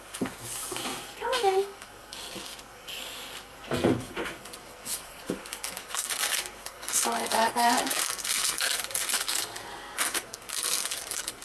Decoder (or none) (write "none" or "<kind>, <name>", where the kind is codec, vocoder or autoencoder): codec, SNAC